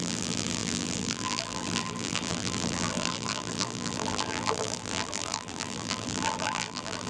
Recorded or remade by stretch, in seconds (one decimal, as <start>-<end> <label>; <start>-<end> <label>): 0.0-7.1 remade